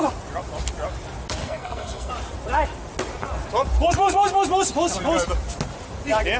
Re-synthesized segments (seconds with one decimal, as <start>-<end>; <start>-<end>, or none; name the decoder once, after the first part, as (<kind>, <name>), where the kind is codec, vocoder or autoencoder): 1.4-2.1 (codec, SNAC)